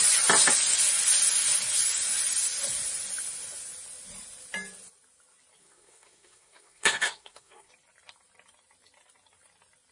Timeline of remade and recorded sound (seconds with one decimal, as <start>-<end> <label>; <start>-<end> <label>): 0.0-5.6 recorded; 5.6-7.7 remade; 7.7-9.9 recorded